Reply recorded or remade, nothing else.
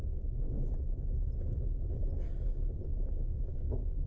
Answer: recorded